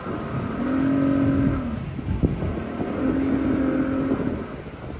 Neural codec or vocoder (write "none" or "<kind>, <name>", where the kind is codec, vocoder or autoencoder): none